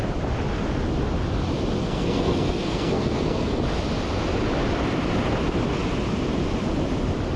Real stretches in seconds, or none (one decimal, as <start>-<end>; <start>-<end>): 0.0-1.8; 3.6-7.4